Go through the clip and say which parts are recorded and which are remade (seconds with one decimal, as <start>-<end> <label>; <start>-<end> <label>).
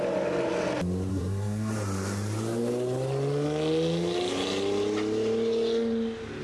0.0-1.1 recorded; 1.1-1.7 remade; 1.7-6.4 recorded